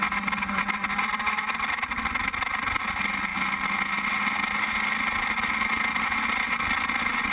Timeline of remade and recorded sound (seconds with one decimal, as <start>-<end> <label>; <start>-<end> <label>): 0.0-7.3 recorded